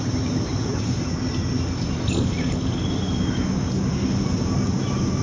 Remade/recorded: recorded